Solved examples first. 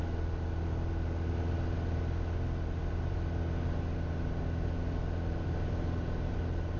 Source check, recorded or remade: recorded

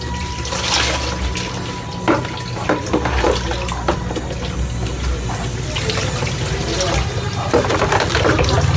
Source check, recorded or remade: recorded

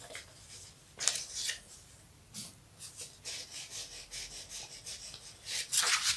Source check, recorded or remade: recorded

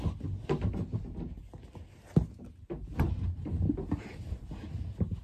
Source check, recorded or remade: recorded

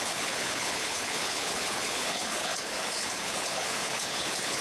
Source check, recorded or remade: remade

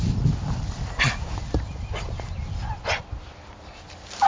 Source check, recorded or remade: recorded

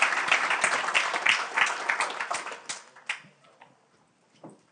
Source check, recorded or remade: recorded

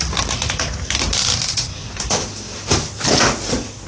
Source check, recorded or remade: recorded